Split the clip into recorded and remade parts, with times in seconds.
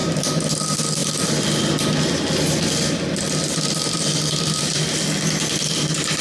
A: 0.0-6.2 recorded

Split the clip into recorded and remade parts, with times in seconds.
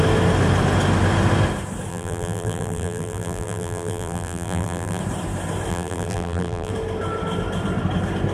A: 0.0-1.9 recorded; 1.9-5.0 remade; 5.0-5.7 recorded; 5.7-6.7 remade; 6.7-8.3 recorded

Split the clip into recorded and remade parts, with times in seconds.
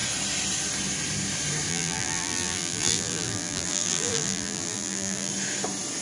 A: 0.0-1.7 recorded; 1.7-5.3 remade; 5.3-6.0 recorded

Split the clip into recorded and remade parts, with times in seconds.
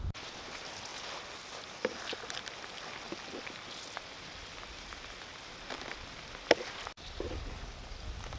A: 0.0-8.4 recorded